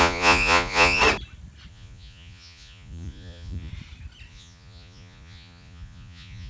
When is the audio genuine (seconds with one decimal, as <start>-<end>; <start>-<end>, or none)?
1.0-1.7; 3.7-4.3

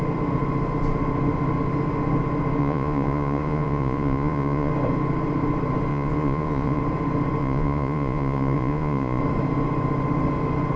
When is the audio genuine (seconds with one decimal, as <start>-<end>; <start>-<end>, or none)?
0.0-2.6; 4.7-5.9; 6.8-7.4; 9.2-10.8

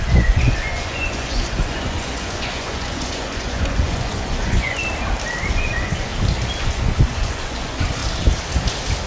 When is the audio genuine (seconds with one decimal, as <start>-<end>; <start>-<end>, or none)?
4.8-5.5; 6.1-6.6; 8.0-9.1

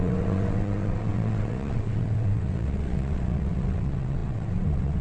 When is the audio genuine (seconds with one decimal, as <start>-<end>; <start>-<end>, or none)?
none

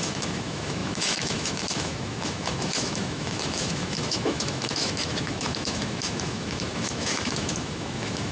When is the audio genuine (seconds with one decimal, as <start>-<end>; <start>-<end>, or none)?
none

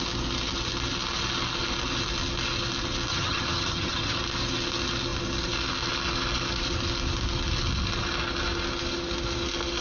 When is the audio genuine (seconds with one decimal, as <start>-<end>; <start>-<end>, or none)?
0.0-3.1; 4.2-9.8